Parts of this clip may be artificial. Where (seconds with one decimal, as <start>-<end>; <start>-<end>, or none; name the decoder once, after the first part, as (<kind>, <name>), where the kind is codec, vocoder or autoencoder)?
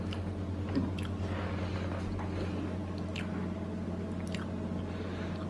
none